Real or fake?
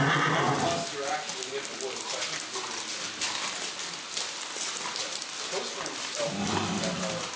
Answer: real